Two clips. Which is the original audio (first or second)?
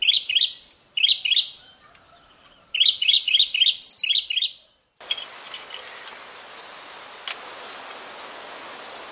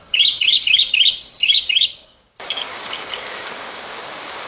first